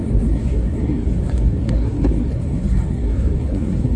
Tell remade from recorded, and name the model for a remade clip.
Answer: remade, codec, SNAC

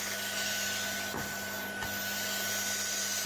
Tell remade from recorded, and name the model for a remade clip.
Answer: recorded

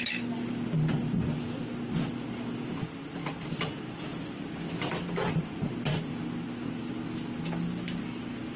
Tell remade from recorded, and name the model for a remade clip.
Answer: recorded